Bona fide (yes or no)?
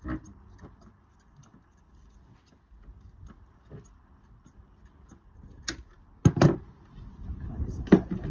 yes